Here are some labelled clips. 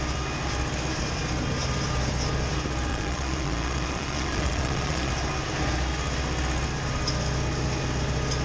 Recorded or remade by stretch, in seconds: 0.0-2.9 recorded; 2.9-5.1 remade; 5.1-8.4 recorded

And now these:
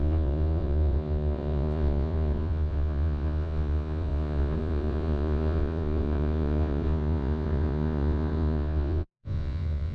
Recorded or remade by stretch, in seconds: 0.0-9.9 remade

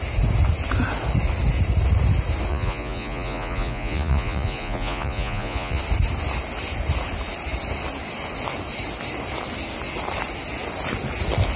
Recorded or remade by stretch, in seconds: 0.0-2.5 recorded; 2.5-5.8 remade; 5.8-11.6 recorded